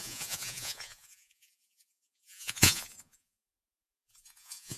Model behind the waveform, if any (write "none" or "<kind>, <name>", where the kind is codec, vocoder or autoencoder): vocoder, Vocos